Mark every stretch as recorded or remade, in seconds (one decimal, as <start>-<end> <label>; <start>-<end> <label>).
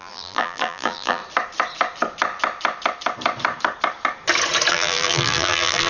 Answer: 0.0-1.2 remade; 1.2-4.7 recorded; 4.7-5.9 remade